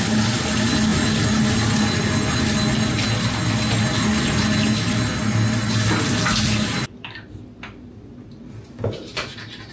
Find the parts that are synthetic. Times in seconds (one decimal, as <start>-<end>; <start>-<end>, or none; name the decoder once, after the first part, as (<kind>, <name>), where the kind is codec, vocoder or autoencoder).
none